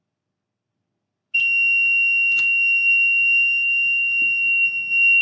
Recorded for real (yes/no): yes